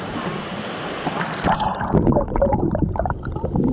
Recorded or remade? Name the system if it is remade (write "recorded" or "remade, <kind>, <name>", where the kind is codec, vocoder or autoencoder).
recorded